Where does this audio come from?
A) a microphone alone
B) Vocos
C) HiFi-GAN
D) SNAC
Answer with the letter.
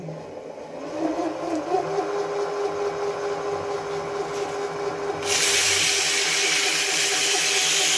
A